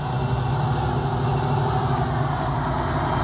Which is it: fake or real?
real